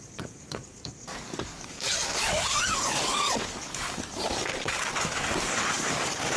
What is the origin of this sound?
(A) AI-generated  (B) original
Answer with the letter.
A